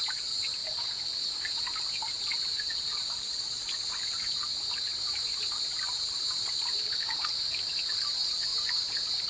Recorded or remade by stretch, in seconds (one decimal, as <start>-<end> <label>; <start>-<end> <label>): 0.0-0.6 recorded; 0.6-1.6 remade; 1.6-4.9 recorded; 4.9-7.9 remade; 7.9-8.5 recorded; 8.5-9.3 remade